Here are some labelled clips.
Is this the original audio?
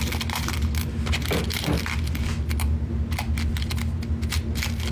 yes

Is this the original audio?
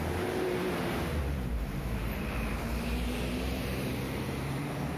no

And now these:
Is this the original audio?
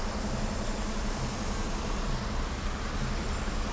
yes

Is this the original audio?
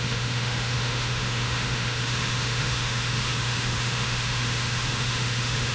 no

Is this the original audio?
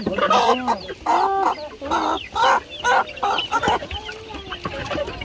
yes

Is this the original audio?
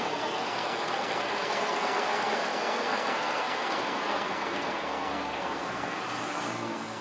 no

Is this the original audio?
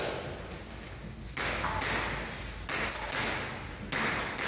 yes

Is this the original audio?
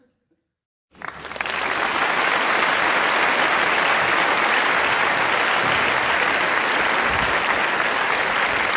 yes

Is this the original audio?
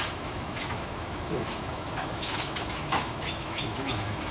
no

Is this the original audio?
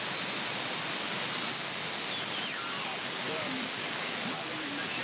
yes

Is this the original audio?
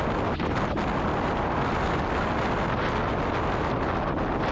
yes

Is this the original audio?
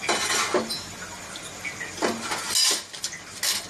yes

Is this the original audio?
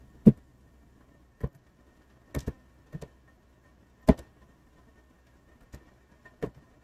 yes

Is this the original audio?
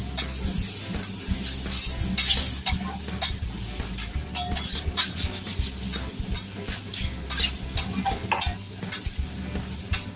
yes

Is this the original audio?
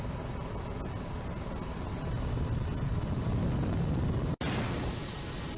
yes